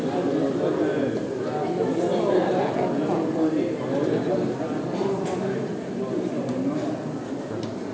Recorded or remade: recorded